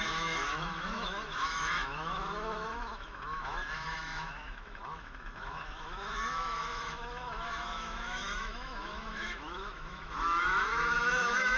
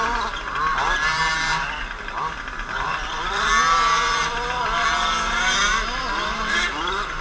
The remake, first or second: first